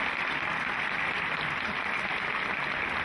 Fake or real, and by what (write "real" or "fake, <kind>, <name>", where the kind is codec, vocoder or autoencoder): real